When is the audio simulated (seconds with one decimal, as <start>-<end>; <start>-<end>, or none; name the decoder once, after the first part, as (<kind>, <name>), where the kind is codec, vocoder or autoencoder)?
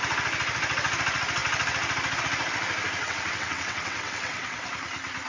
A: 3.0-4.7 (vocoder, WaveNeXt)